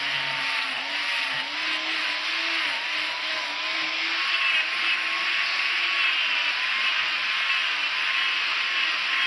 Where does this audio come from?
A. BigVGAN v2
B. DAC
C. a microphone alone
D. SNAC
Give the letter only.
C